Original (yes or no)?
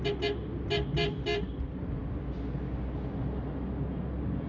yes